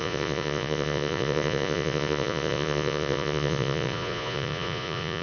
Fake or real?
fake